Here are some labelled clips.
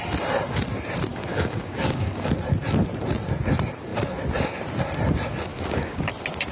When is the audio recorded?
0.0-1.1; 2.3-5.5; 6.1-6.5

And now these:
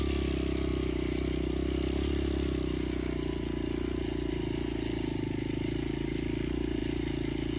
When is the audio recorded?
0.0-7.6

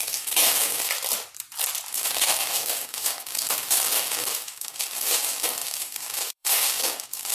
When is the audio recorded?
0.9-1.9